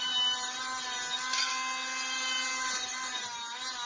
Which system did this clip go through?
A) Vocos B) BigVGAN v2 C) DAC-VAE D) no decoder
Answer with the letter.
D